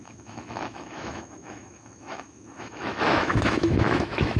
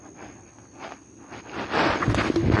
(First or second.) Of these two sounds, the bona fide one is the second